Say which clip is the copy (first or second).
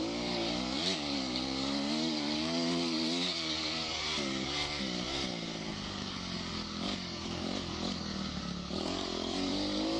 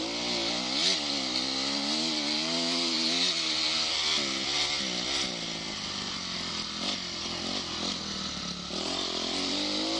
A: first